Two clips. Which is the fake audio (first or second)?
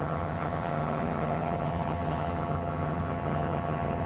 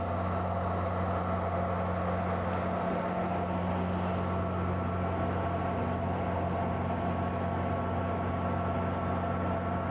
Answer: first